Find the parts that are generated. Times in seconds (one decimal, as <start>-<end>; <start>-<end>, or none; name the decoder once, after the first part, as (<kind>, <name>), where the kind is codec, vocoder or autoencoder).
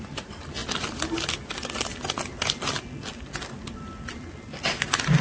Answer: none